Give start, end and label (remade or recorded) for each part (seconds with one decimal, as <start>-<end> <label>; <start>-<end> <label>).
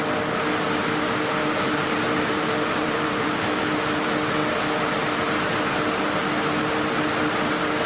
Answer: 0.0-1.4 recorded; 1.4-3.5 remade; 3.5-7.9 recorded